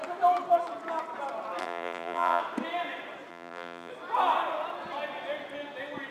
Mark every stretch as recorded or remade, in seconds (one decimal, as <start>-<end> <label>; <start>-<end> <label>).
0.0-1.6 recorded; 1.6-2.4 remade; 2.4-3.3 recorded; 3.3-3.9 remade; 3.9-6.1 recorded